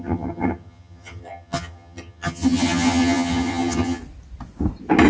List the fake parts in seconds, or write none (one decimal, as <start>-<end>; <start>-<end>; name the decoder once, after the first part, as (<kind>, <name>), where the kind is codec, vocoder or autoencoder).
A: 0.0-4.0 (vocoder, HiFi-GAN)